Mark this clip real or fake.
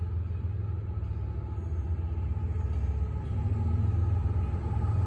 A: real